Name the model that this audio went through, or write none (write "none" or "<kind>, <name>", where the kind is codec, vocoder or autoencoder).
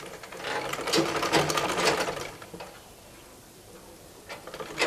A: none